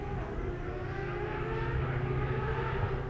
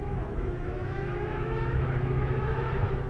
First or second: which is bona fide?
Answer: first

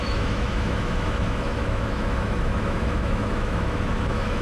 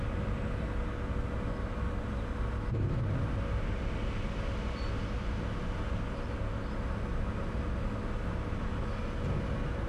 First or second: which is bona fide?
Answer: second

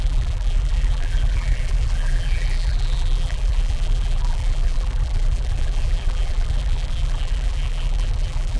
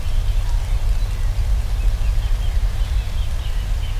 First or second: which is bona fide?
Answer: second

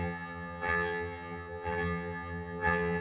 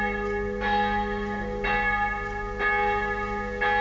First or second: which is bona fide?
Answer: second